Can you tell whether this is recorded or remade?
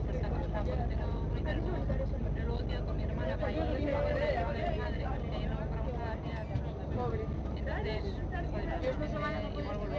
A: recorded